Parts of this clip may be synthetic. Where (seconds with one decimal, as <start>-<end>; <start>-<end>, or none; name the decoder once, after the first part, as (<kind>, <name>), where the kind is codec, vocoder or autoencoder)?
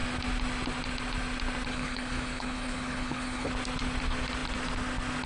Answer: 1.7-3.5 (codec, HILCodec)